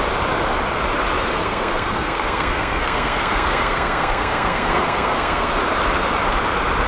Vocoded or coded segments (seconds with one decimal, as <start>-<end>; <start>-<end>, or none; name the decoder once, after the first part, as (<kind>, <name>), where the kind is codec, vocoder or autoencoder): 1.4-5.5 (codec, SNAC)